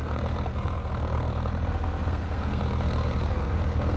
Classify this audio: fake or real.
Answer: fake